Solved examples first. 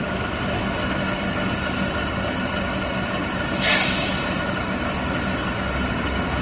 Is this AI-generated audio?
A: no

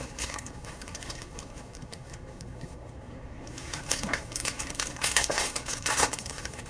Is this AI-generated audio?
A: yes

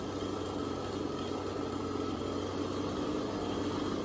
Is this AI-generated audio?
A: no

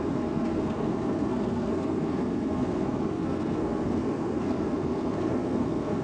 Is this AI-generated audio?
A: yes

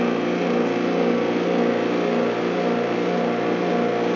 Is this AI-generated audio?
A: no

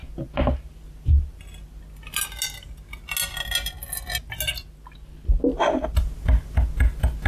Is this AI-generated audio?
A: no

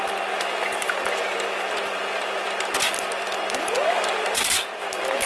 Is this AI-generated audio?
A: no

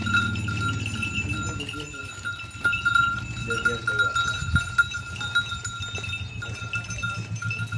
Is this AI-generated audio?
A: no